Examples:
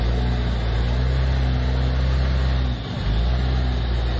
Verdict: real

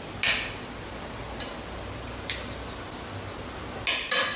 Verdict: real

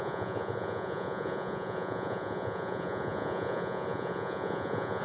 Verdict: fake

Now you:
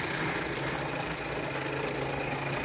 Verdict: real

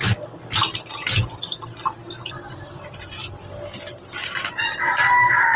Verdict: real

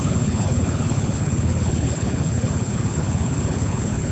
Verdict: fake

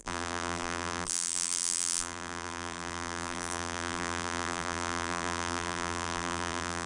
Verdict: fake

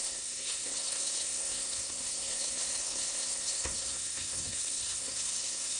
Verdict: fake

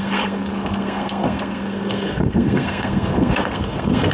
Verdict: fake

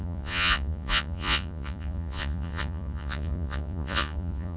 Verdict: fake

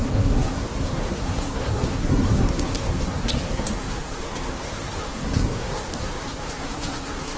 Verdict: fake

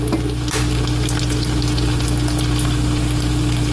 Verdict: real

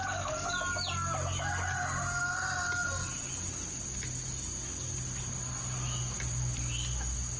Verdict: real